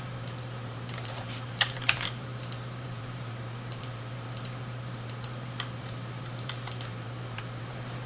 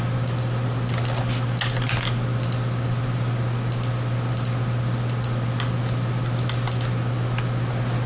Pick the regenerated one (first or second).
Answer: first